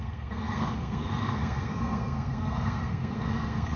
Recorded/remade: remade